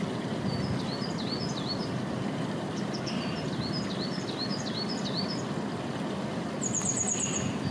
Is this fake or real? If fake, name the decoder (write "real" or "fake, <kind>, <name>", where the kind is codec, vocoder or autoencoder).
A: real